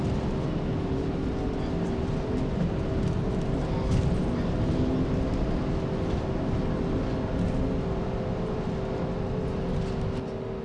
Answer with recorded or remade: recorded